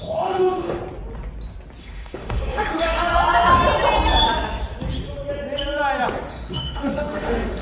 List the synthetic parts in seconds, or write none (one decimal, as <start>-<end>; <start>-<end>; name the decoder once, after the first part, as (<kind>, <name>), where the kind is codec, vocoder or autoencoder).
0.0-0.8 (autoencoder, DAC-VAE); 1.8-3.1; 6.3-7.6